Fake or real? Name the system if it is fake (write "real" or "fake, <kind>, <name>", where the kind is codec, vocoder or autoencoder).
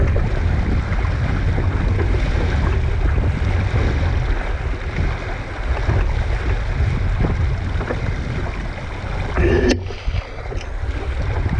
real